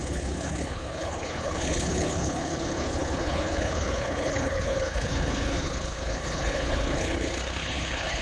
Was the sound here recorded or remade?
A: remade